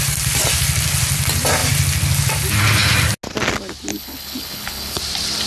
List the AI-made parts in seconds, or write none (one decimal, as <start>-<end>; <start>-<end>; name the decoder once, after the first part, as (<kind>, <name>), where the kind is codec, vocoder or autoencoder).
3.9-5.0 (codec, HILCodec)